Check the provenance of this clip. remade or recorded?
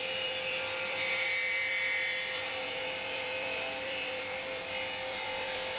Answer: remade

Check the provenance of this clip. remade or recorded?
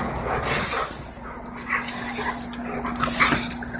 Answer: recorded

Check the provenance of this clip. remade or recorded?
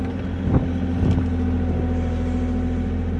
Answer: recorded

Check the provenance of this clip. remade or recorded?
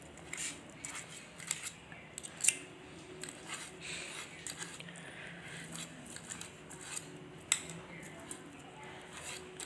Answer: recorded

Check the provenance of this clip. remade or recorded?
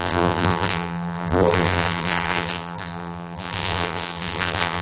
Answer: remade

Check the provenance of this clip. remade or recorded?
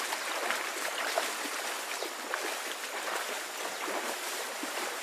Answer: recorded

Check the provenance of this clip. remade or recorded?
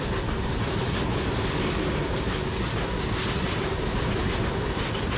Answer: recorded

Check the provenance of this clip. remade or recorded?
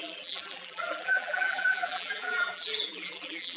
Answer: remade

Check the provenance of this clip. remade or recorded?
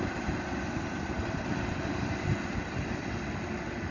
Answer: recorded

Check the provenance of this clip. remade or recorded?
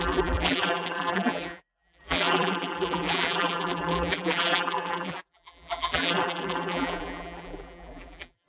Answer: remade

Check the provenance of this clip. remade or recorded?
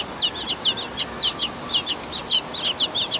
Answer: recorded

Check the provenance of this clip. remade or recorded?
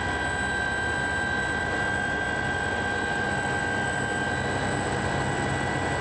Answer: recorded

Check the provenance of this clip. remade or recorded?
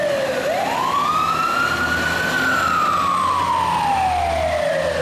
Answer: recorded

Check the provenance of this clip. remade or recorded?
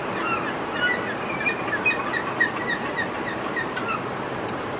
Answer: remade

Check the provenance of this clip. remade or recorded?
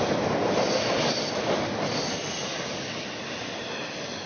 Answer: remade